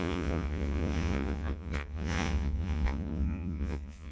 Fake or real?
fake